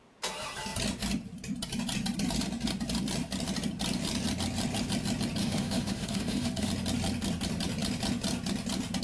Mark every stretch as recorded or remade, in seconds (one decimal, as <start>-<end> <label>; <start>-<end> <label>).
0.0-5.4 recorded; 5.4-6.7 remade; 6.7-9.0 recorded